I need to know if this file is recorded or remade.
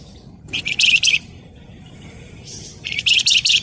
remade